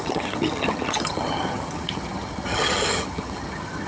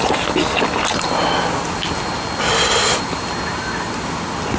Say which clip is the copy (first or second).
first